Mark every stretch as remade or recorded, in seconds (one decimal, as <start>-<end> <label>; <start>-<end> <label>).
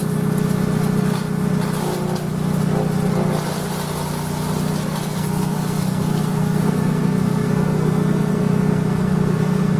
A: 0.0-4.8 recorded; 4.8-9.8 remade